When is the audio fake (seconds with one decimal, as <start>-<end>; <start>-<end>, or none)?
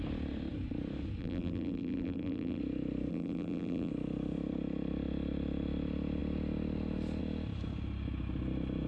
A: 1.2-2.6; 3.1-3.9